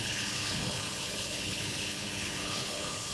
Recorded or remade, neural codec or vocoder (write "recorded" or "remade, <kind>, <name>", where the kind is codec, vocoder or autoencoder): remade, codec, HILCodec